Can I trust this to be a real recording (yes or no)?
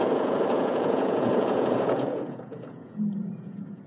no